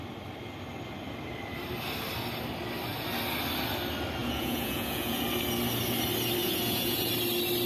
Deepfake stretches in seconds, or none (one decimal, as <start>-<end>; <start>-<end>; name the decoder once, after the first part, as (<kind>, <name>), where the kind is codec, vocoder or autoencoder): 4.2-5.2 (vocoder, Vocos); 6.4-7.1